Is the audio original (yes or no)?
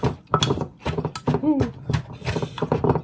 yes